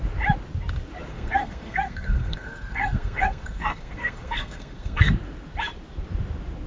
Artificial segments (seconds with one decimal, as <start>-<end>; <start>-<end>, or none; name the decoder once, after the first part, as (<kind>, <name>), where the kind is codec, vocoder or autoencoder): 1.1-5.1 (codec, SNAC)